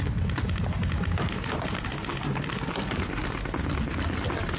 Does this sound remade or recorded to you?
recorded